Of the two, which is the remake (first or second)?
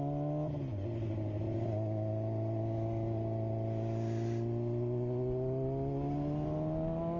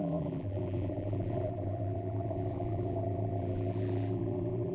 second